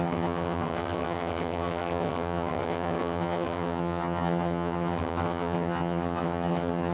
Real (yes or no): no